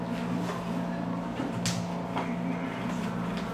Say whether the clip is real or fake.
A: real